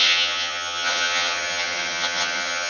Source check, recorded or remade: remade